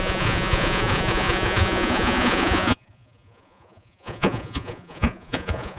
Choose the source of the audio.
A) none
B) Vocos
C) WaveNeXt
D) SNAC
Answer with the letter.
B